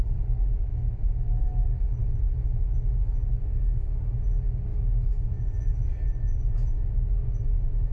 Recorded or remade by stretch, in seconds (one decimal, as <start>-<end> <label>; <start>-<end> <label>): 0.0-2.0 recorded; 2.0-3.3 remade; 3.3-7.9 recorded